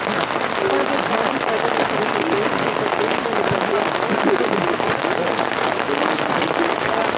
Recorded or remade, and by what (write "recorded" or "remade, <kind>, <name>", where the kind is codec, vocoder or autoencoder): recorded